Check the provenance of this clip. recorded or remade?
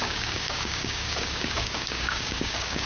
remade